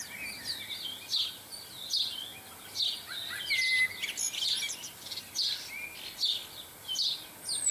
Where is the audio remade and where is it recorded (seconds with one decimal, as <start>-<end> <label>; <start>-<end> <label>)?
0.0-7.7 recorded